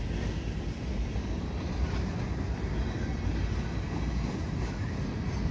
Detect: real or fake real